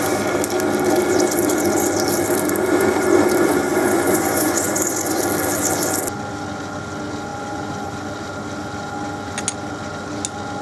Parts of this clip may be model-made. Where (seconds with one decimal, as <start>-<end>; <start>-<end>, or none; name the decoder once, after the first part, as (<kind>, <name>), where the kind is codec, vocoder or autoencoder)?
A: 3.7-5.2 (vocoder, Vocos); 7.3-7.9